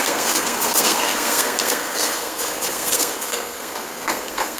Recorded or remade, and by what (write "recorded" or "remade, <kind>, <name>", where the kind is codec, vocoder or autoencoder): remade, codec, SNAC